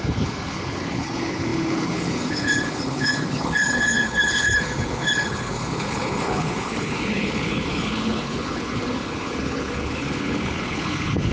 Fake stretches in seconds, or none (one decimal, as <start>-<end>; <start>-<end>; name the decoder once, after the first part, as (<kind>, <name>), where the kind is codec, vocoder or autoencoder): 0.0-11.3 (codec, HILCodec)